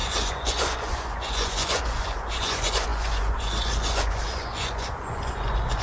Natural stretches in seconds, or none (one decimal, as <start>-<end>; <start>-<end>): none